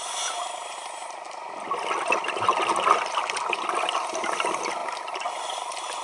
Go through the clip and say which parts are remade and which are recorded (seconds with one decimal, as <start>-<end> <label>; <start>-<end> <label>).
0.0-6.0 recorded